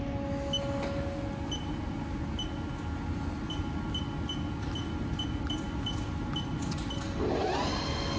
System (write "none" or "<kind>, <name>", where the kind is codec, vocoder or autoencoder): none